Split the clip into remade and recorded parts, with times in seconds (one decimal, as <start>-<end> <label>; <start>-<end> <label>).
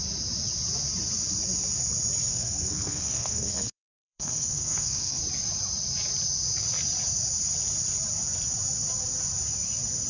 0.0-2.3 recorded; 2.3-5.2 remade; 5.2-10.1 recorded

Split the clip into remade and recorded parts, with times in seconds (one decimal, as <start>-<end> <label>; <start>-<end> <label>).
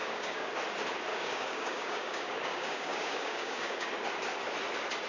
0.0-0.5 remade; 0.5-1.1 recorded; 1.1-3.9 remade; 3.9-5.1 recorded